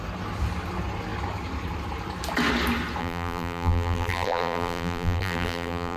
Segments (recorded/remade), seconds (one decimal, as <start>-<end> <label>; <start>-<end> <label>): 0.0-3.0 recorded; 3.0-6.0 remade